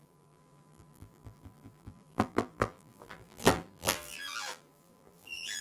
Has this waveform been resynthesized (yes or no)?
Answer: yes